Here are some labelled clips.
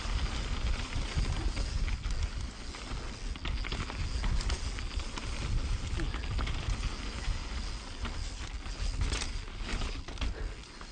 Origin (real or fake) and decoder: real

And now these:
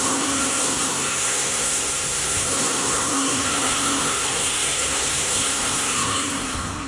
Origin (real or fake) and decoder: fake, codec, SNAC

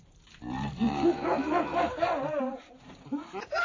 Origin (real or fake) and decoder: fake, vocoder, BigVGAN v2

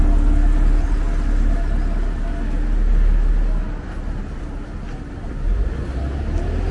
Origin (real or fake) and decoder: real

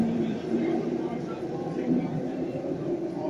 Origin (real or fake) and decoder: fake, vocoder, BigVGAN v2